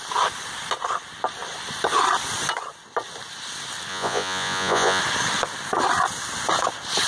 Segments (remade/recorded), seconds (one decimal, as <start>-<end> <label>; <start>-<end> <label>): 0.0-3.9 recorded; 3.9-5.0 remade; 5.0-7.1 recorded